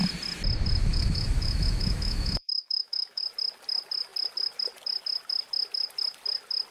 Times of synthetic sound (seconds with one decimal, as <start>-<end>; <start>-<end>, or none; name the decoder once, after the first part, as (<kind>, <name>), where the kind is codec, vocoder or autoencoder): 0.9-3.2 (autoencoder, DAC-VAE)